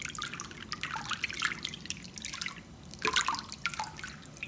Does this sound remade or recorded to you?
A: recorded